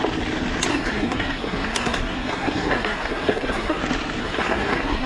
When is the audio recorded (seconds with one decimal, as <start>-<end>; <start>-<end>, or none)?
0.0-0.7; 3.8-4.2

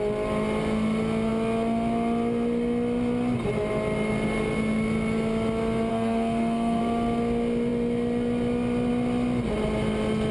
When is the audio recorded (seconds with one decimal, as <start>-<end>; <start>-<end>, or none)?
0.0-5.9; 6.8-10.3

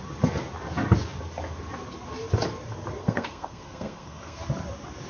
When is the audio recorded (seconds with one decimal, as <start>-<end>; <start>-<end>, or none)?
0.0-3.0; 4.4-5.1

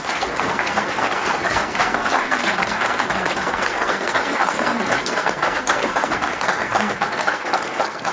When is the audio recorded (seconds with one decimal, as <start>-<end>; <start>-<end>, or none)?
none